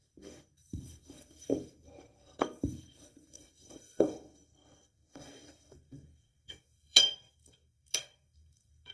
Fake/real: fake